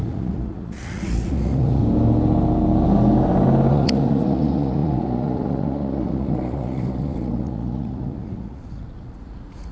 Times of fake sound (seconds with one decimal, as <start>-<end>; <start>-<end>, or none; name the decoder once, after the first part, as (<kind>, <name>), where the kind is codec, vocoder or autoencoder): 0.0-1.8 (vocoder, Vocos); 3.7-9.7